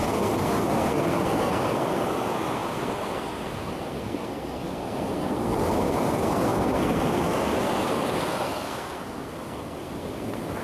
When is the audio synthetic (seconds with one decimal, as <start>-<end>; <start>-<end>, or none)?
0.0-10.6